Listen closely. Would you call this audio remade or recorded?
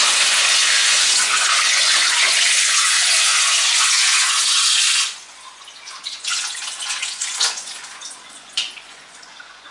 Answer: remade